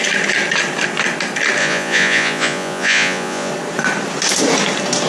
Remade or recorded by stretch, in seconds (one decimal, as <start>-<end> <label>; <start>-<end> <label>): 0.0-1.6 recorded; 1.6-3.5 remade; 3.5-5.1 recorded

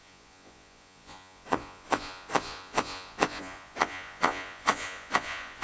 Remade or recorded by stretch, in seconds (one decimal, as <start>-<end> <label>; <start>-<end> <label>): 0.0-5.6 remade

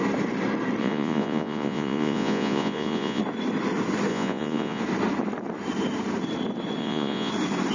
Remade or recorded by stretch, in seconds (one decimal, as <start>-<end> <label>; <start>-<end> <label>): 0.0-0.8 recorded; 0.8-3.2 remade; 3.2-4.1 recorded; 4.1-4.8 remade; 4.8-6.8 recorded; 6.8-7.3 remade; 7.3-7.7 recorded

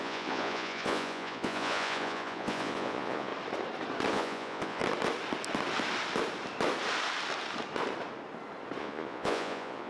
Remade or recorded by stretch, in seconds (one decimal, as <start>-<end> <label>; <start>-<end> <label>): 0.0-3.3 remade; 3.3-4.1 recorded; 4.1-4.8 remade; 4.8-8.8 recorded; 8.8-9.9 remade